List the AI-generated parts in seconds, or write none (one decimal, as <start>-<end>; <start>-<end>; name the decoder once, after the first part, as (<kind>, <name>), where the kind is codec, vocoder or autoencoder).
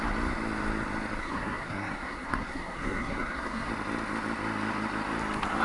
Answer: 1.2-3.7 (codec, SNAC)